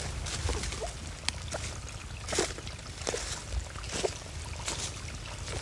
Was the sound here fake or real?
real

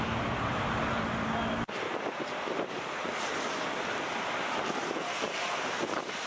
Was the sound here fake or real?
fake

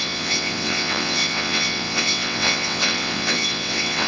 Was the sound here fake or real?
fake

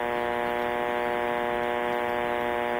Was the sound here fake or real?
real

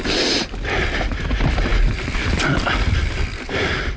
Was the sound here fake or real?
real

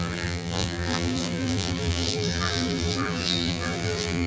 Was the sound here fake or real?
fake